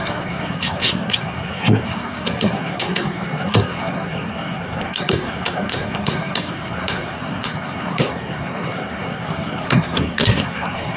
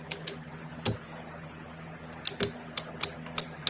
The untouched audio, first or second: second